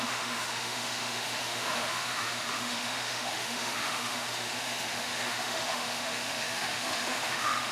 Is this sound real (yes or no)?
no